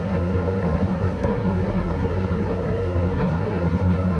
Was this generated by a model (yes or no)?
yes